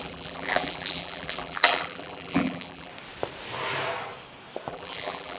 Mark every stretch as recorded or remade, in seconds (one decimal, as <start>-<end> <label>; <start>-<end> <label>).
0.0-2.9 remade; 2.9-4.7 recorded; 4.7-5.4 remade